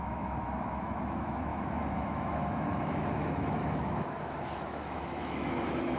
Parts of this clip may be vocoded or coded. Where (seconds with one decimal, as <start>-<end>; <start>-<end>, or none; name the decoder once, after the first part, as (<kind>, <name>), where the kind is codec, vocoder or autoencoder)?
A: 0.0-6.0 (autoencoder, DAC-VAE)